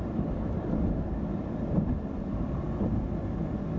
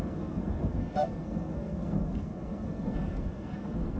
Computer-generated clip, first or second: second